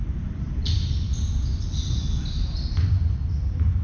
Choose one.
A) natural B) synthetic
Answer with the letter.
B